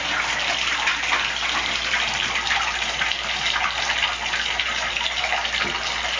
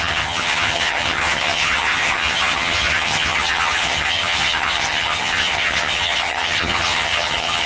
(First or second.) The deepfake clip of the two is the second